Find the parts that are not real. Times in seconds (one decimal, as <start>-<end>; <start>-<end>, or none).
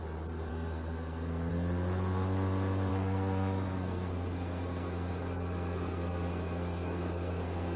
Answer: 0.5-1.5; 2.9-7.8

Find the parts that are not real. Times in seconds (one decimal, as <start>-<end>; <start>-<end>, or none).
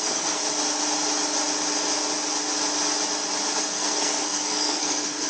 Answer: 0.0-0.4; 3.6-5.3